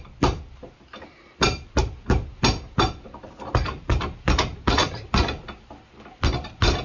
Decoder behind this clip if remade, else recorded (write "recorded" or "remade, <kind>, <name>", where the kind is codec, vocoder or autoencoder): recorded